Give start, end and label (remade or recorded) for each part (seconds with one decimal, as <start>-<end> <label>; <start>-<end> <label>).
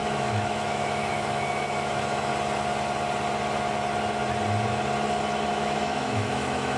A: 0.0-2.3 remade; 2.3-5.5 recorded; 5.5-6.8 remade